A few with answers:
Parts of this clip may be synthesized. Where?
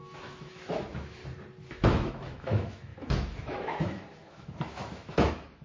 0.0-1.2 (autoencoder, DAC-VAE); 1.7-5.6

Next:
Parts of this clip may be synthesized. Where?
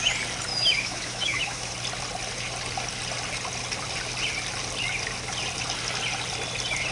0.5-1.7 (autoencoder, DAC-VAE)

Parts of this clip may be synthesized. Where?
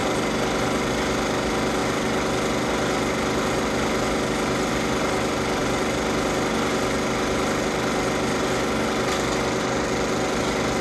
none